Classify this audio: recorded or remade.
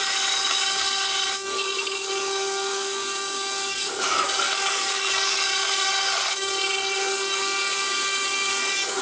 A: remade